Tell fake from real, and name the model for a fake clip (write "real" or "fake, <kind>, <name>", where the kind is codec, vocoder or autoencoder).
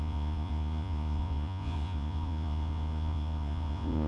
fake, vocoder, Vocos